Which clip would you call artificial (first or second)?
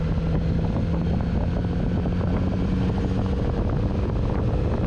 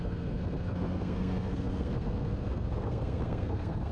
second